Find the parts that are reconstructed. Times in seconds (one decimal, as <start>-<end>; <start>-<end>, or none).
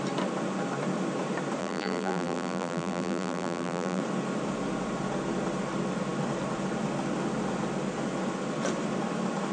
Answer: 1.6-4.0